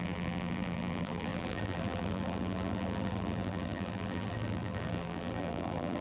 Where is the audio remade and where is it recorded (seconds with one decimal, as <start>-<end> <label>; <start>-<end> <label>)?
0.0-6.0 remade